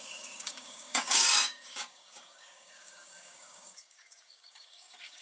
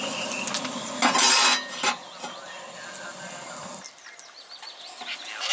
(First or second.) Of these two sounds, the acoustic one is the second